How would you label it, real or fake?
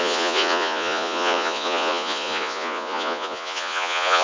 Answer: fake